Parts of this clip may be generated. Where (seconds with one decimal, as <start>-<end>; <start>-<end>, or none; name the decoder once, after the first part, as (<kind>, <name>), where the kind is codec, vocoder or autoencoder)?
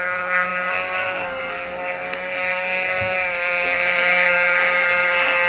0.0-5.5 (codec, SNAC)